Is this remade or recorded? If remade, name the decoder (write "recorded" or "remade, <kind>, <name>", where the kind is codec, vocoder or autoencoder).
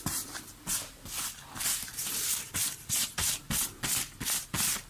recorded